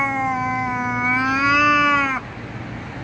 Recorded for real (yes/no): yes